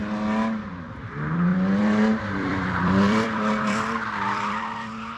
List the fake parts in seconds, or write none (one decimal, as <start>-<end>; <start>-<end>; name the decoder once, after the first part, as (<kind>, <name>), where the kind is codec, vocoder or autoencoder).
0.7-5.2 (vocoder, BigVGAN v2)